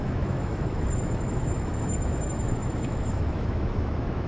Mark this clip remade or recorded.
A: remade